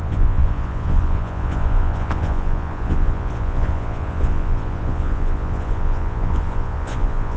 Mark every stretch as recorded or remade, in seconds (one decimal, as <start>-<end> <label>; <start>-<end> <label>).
0.0-7.4 remade